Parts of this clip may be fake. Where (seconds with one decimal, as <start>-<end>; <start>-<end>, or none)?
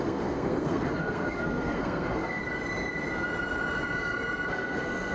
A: 0.0-2.4; 4.5-5.1